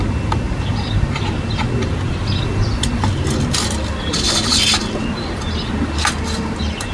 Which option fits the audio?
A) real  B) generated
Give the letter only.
A